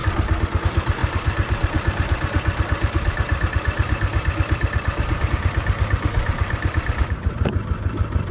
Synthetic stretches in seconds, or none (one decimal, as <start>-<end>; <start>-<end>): 0.6-8.3